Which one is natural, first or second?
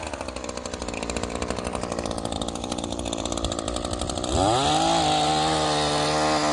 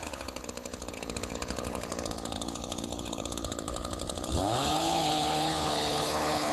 first